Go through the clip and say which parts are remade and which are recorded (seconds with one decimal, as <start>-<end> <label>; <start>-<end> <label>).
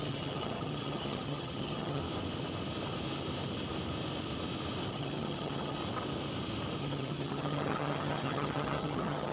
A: 0.0-2.0 remade; 2.0-4.9 recorded; 4.9-5.8 remade; 5.8-6.8 recorded; 6.8-9.3 remade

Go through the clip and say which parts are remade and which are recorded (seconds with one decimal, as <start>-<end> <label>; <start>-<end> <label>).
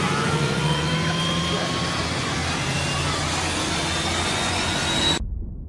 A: 0.0-0.9 remade; 0.9-2.0 recorded; 2.0-2.4 remade; 2.4-4.2 recorded; 4.2-4.8 remade; 4.8-5.7 recorded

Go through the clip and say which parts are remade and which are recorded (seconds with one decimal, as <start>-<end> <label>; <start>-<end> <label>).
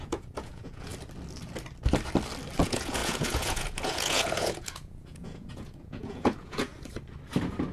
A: 0.0-0.9 remade; 0.9-2.6 recorded; 2.6-6.7 remade; 6.7-7.7 recorded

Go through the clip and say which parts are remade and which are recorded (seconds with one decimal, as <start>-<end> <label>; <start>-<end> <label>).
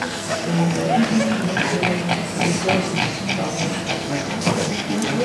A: 0.0-0.8 remade; 0.8-3.9 recorded; 3.9-5.2 remade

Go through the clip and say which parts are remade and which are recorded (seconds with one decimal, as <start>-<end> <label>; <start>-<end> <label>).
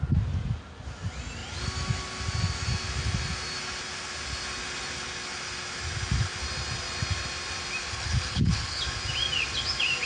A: 0.0-7.8 recorded; 7.8-8.8 remade; 8.8-10.1 recorded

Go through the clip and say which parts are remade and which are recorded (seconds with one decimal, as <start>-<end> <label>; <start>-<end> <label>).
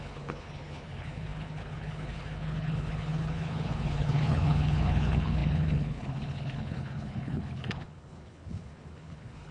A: 0.0-9.5 remade